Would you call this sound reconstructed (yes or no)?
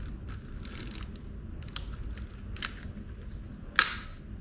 no